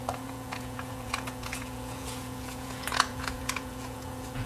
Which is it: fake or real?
fake